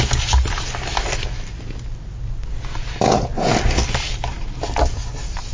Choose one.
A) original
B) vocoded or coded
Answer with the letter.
A